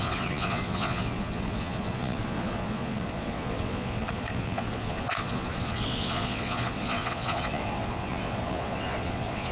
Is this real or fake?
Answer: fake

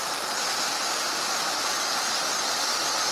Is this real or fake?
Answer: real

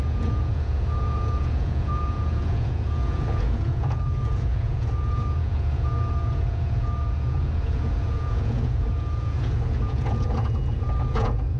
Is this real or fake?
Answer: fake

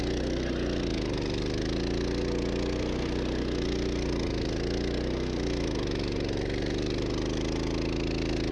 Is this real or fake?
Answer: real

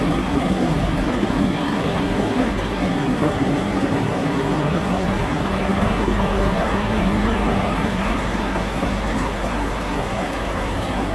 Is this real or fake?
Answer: fake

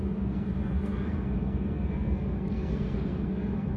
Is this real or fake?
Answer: fake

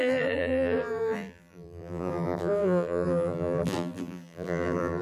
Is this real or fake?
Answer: fake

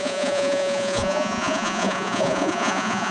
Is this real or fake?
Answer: fake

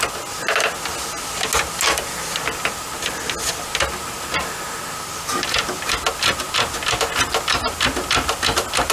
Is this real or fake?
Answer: real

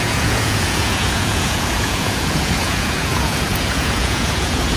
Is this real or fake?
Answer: fake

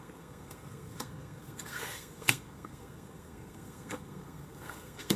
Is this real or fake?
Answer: fake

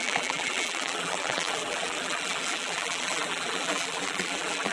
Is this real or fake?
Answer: fake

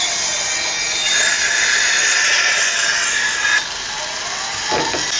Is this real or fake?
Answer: real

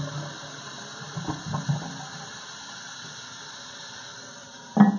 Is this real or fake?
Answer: real